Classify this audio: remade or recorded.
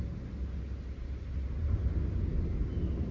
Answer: recorded